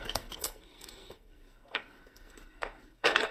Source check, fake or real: fake